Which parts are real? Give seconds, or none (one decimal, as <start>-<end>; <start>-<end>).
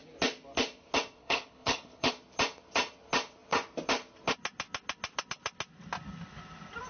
0.0-1.2; 2.1-6.9